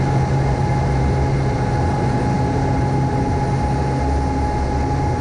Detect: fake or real real